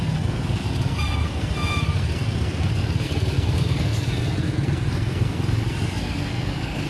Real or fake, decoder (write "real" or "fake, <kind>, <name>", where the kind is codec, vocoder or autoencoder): fake, codec, SNAC